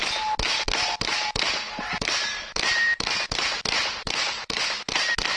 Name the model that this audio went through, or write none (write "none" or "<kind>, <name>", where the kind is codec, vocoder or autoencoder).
vocoder, BigVGAN v2